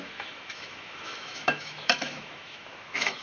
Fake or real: fake